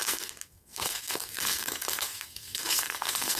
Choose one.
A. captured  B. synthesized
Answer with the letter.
B